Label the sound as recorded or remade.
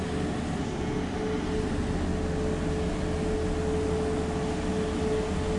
recorded